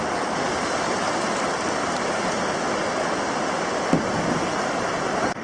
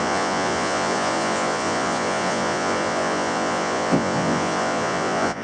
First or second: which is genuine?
first